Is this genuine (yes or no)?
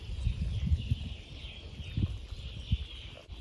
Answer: yes